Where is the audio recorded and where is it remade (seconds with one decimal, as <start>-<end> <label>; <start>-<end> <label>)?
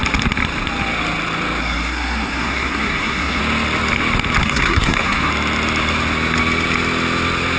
0.0-1.6 recorded; 1.6-3.4 remade; 3.4-4.4 recorded; 4.4-5.3 remade; 5.3-7.6 recorded